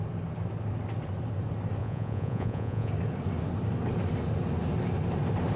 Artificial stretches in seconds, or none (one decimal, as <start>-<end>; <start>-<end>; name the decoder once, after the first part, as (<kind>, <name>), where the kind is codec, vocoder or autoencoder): 1.8-2.9 (vocoder, Vocos)